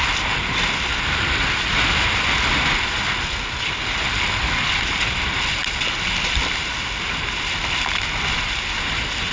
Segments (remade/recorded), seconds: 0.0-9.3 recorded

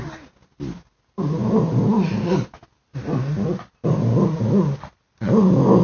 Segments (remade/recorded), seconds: 0.0-5.8 recorded

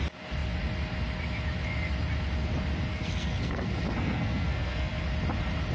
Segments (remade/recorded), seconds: 0.0-2.9 recorded; 2.9-5.0 remade; 5.0-5.7 recorded

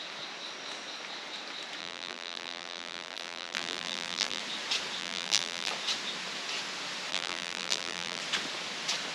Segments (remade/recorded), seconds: 0.0-1.8 recorded; 1.8-4.4 remade; 4.4-5.0 recorded; 5.0-5.7 remade; 5.7-7.1 recorded; 7.1-8.2 remade; 8.2-9.1 recorded

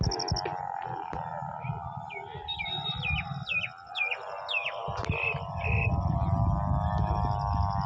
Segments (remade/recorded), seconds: 0.0-7.9 recorded